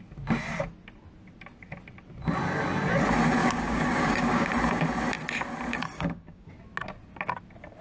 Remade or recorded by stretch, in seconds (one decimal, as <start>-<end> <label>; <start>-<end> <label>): 0.0-3.4 recorded; 3.4-4.5 remade; 4.5-5.7 recorded; 5.7-6.5 remade; 6.5-7.8 recorded